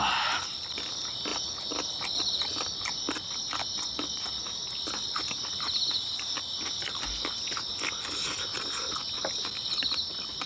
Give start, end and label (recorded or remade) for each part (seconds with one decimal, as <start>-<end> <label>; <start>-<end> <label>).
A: 0.0-10.5 recorded